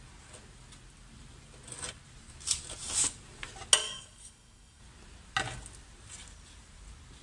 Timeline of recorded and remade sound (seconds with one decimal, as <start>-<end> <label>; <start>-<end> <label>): 0.0-3.8 recorded; 3.8-4.8 remade; 4.8-7.2 recorded